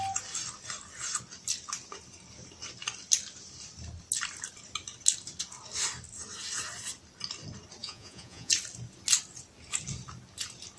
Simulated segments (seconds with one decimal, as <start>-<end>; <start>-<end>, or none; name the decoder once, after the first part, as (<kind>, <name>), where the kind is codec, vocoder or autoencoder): 7.8-8.5 (vocoder, Vocos)